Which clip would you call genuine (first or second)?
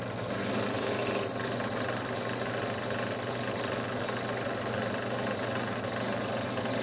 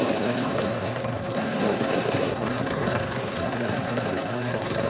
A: first